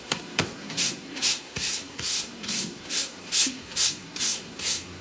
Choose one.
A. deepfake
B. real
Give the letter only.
A